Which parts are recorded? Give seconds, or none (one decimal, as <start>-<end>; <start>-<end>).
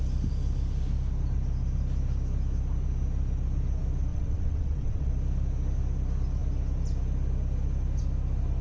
0.0-4.1; 5.1-8.6